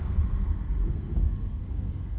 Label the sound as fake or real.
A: fake